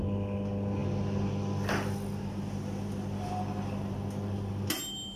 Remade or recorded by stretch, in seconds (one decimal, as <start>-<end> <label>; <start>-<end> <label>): 0.0-5.2 recorded